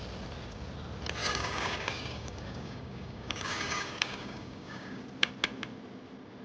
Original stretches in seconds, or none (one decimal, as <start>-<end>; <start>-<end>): 0.0-1.2; 5.0-6.4